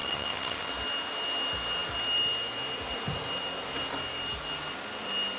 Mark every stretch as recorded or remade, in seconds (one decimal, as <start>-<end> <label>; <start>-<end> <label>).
0.0-0.7 remade; 0.7-5.4 recorded